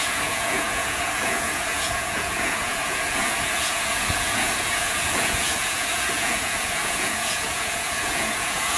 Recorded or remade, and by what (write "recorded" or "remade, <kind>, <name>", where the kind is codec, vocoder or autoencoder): remade, vocoder, Vocos